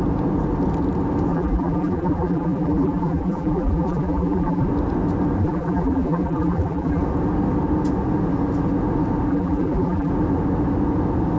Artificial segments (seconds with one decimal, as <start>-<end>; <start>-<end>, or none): 1.3-4.7; 5.4-7.0; 9.3-10.1